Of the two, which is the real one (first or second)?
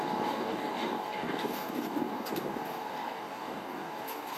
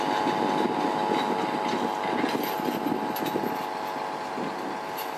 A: second